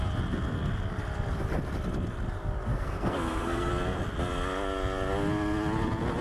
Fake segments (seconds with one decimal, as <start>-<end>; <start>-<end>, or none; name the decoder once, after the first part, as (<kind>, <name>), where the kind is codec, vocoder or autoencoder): 2.7-3.7 (codec, SNAC)